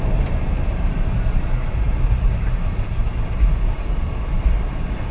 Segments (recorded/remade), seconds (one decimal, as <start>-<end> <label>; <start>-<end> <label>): 0.0-0.7 recorded; 0.7-3.0 remade; 3.0-5.1 recorded